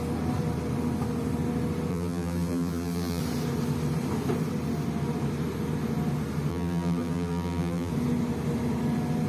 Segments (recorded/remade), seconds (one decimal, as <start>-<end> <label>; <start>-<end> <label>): 0.0-1.9 recorded; 1.9-3.2 remade; 3.2-6.5 recorded; 6.5-7.9 remade; 7.9-9.3 recorded